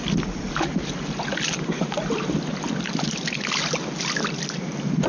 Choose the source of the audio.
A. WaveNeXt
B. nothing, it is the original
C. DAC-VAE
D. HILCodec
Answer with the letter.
B